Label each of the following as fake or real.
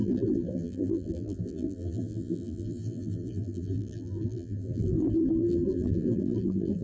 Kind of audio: fake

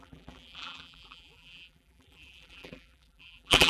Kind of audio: fake